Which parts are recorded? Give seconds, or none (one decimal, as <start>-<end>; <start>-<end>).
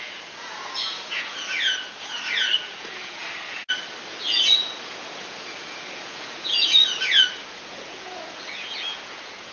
3.6-4.1